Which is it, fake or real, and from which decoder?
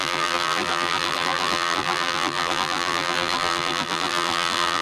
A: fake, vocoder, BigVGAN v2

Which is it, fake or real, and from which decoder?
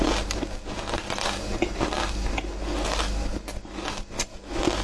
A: real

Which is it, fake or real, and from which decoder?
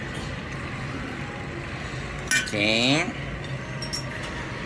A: real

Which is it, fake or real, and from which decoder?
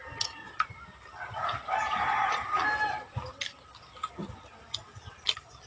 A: real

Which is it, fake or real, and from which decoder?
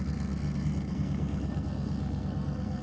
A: fake, codec, SNAC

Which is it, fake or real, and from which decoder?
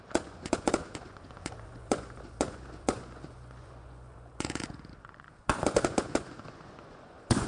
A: fake, vocoder, Vocos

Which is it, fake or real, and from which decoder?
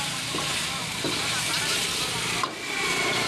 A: real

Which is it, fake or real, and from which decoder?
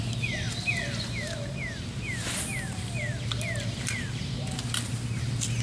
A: real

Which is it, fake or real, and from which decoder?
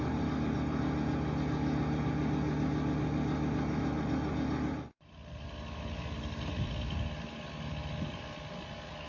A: real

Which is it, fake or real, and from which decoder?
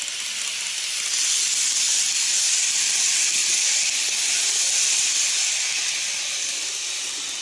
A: real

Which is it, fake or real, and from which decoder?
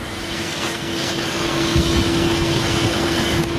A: fake, codec, SNAC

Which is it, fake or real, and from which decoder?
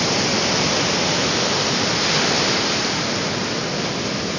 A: real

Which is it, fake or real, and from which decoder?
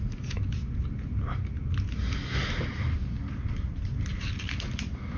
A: real